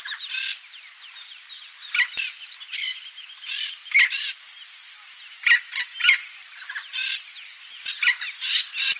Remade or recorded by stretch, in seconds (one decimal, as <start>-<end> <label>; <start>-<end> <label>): 0.0-9.0 recorded